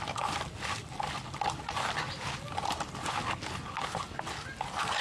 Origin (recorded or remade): recorded